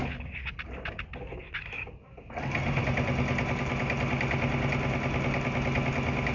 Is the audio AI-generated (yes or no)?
no